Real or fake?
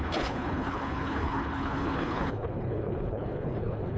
fake